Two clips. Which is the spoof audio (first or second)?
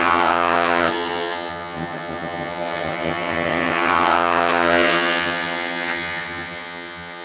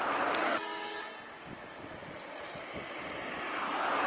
first